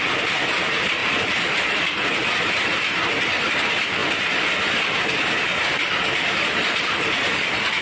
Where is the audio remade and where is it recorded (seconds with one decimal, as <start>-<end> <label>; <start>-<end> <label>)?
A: 0.0-7.8 recorded